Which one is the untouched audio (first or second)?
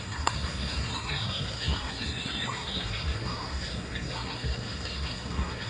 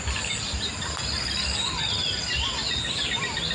second